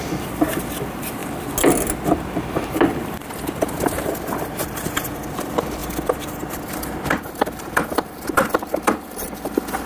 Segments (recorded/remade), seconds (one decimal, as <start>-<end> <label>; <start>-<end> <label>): 0.0-1.2 remade; 1.2-2.7 recorded; 2.7-9.9 remade